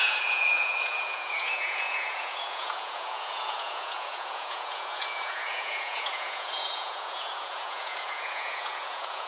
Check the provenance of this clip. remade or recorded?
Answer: remade